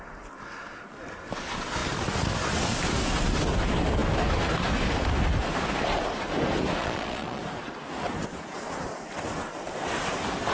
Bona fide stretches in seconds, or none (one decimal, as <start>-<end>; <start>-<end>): 0.0-6.8; 7.4-10.5